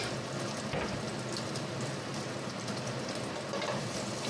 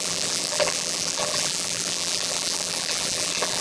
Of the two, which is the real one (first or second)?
first